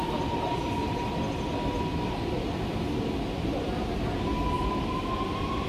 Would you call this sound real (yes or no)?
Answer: yes